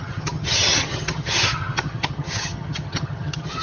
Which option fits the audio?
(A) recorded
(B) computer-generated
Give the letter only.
B